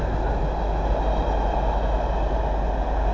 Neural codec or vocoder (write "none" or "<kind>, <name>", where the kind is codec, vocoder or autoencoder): none